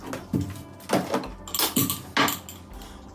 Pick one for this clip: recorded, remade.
recorded